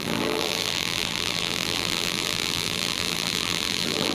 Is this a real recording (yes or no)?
no